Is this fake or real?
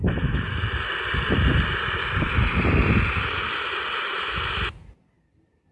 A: fake